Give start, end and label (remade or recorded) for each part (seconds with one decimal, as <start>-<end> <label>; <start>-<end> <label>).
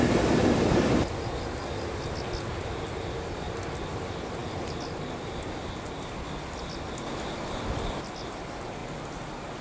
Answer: 0.0-9.6 recorded